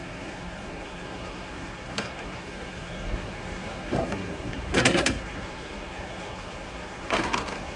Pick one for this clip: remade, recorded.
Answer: remade